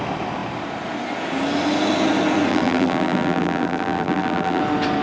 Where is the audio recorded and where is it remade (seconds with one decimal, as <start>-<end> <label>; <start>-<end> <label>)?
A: 0.0-2.5 recorded; 2.5-4.6 remade; 4.6-5.0 recorded